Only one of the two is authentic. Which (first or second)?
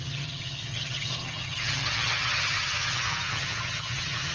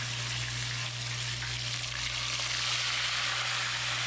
second